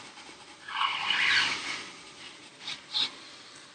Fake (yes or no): no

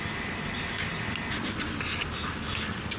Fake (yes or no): no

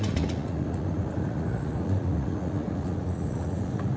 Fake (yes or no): yes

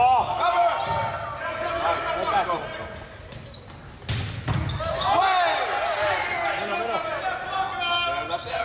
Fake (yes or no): no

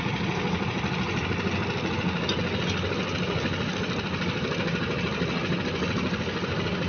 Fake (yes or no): no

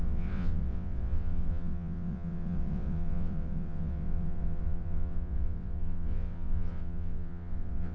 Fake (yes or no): yes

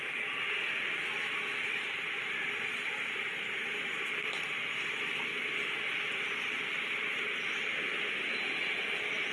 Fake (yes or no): no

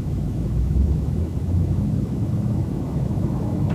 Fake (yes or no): yes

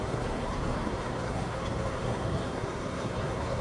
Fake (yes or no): yes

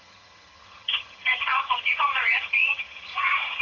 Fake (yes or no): yes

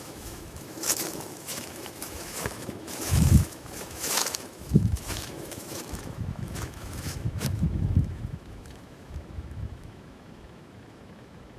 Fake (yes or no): yes